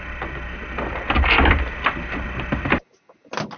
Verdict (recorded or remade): recorded